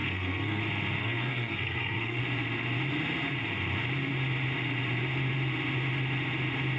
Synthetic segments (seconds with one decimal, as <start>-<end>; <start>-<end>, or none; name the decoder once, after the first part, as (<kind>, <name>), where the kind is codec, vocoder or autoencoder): 0.0-0.6 (codec, SNAC); 1.0-2.2